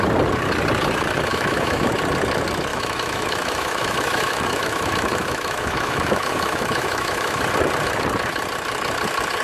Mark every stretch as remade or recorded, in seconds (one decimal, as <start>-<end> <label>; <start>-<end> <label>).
0.0-1.3 recorded; 1.3-1.9 remade; 1.9-2.7 recorded; 2.7-7.4 remade; 7.4-9.4 recorded